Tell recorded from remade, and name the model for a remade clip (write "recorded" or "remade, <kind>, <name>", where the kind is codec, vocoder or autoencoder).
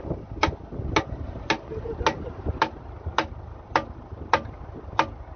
recorded